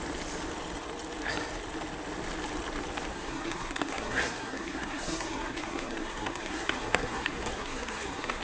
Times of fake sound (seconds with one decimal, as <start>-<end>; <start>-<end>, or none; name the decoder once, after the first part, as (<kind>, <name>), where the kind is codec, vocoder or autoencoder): 3.1-8.4 (codec, SNAC)